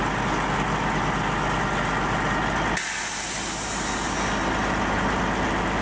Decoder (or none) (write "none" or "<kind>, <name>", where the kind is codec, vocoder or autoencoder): none